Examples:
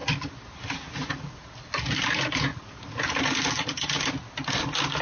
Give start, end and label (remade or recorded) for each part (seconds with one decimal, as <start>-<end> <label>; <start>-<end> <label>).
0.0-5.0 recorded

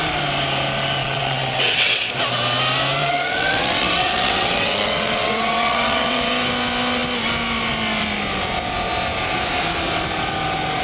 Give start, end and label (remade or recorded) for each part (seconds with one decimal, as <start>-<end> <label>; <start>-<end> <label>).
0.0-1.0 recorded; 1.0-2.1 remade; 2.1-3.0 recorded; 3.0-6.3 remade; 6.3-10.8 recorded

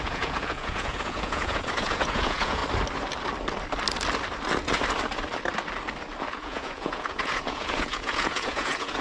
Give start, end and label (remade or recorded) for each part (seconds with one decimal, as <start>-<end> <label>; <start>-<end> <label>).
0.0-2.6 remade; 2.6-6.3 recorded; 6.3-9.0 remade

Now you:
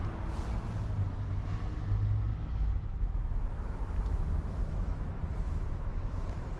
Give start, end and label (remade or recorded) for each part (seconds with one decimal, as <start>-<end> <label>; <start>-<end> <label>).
0.0-2.3 recorded; 2.3-6.6 remade

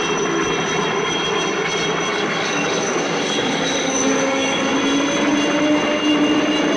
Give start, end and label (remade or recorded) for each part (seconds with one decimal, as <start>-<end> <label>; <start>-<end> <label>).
0.0-2.1 recorded; 2.1-4.7 remade; 4.7-6.8 recorded

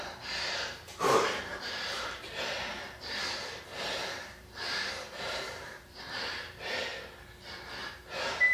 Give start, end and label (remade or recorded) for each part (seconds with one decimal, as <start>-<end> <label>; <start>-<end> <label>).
0.0-6.9 remade; 6.9-7.8 recorded; 7.8-8.5 remade